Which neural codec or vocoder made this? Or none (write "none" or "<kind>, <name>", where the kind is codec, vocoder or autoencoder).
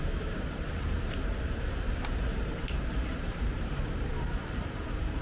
vocoder, BigVGAN v2